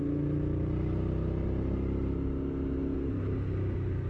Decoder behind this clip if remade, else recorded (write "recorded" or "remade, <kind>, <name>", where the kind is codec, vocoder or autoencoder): recorded